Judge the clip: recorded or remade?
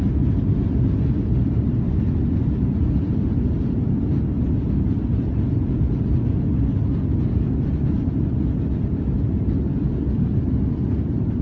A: recorded